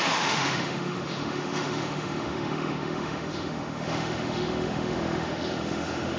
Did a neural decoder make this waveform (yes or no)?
yes